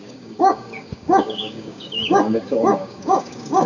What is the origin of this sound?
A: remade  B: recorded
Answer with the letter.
A